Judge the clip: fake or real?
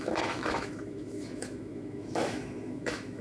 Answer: fake